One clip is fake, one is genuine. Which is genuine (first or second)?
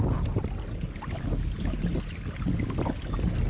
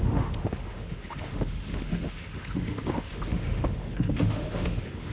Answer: first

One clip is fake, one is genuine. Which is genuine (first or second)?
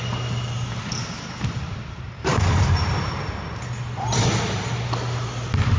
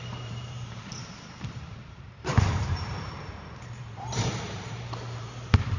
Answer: first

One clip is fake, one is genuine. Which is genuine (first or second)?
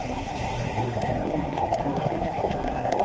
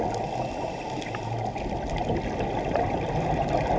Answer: second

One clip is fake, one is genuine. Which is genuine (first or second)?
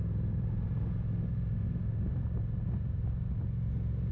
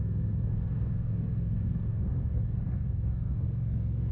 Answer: first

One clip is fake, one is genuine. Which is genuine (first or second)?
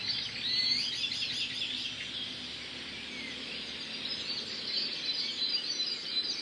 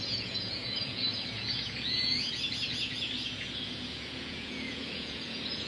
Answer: first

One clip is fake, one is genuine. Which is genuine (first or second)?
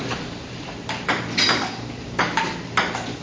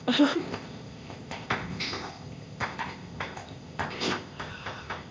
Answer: first